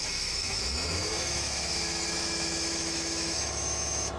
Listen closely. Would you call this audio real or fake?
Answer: fake